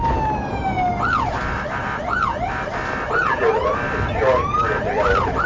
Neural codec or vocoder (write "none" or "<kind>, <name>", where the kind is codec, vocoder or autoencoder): none